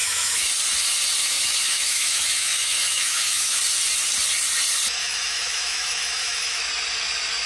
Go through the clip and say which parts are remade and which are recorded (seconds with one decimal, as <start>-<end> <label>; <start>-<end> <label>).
0.0-0.5 remade; 0.5-1.2 recorded; 1.2-3.6 remade; 3.6-5.0 recorded; 5.0-6.7 remade; 6.7-7.5 recorded

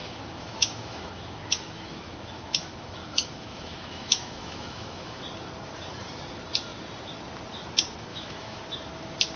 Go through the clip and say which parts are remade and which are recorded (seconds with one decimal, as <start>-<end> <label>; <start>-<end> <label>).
0.0-5.2 remade; 5.2-8.1 recorded; 8.1-8.6 remade; 8.6-9.4 recorded

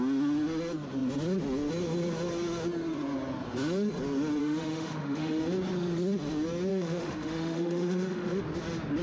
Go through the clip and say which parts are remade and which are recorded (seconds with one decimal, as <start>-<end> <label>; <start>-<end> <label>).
0.0-4.4 recorded; 4.4-5.4 remade; 5.4-6.7 recorded; 6.7-8.4 remade; 8.4-9.0 recorded

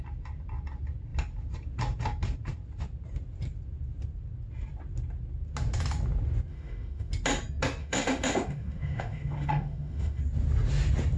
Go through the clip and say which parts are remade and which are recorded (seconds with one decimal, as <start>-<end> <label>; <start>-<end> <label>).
0.0-6.5 recorded; 6.5-7.1 remade; 7.1-7.8 recorded; 7.8-10.2 remade; 10.2-11.2 recorded

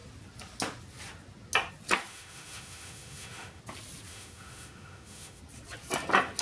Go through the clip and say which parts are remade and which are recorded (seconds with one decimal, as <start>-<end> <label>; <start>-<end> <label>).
0.0-2.1 recorded; 2.1-3.6 remade; 3.6-4.1 recorded; 4.1-5.4 remade; 5.4-6.4 recorded

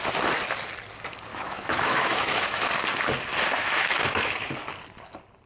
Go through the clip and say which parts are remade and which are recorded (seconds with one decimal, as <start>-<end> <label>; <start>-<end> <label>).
0.0-1.3 recorded; 1.3-2.7 remade; 2.7-3.6 recorded; 3.6-4.5 remade; 4.5-5.5 recorded